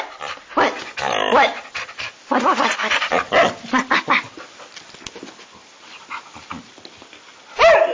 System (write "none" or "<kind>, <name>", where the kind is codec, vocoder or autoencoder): none